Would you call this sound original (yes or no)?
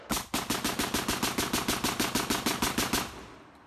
yes